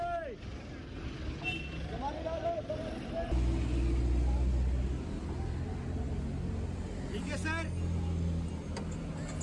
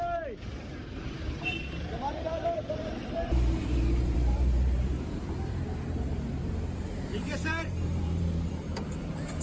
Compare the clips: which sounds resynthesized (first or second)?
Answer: second